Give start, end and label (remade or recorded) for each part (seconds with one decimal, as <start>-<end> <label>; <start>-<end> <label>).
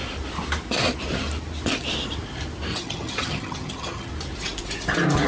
0.0-2.7 recorded; 2.7-4.1 remade; 4.1-5.3 recorded